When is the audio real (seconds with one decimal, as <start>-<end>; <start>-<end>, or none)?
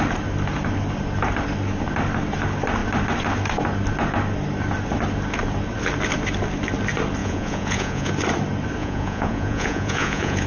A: 0.0-7.2; 8.1-8.8